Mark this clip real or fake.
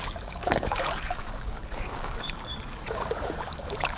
fake